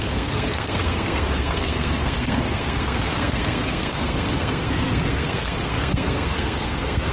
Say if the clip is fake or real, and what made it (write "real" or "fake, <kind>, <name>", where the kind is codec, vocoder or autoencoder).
fake, codec, SNAC